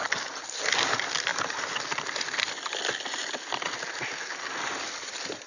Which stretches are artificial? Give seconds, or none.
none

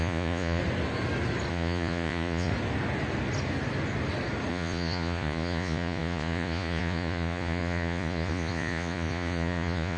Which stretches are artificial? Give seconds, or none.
0.0-0.6 (vocoder, Vocos); 1.5-2.5; 4.5-10.0